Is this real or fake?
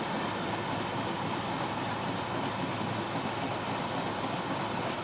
real